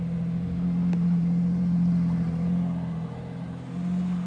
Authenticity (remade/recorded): recorded